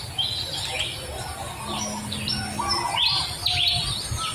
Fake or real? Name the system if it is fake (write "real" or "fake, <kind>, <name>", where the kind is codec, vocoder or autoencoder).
real